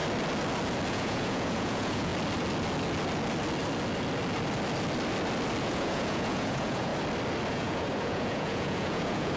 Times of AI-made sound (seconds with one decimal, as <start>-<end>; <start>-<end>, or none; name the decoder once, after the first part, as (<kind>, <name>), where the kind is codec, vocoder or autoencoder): 0.9-2.1 (vocoder, Vocos); 5.6-6.9; 7.5-9.4